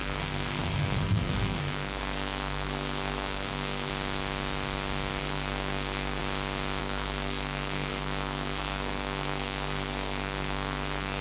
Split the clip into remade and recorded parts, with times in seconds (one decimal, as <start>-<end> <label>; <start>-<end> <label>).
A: 0.0-3.9 remade; 3.9-5.2 recorded; 5.2-6.2 remade; 6.2-6.8 recorded; 6.8-11.2 remade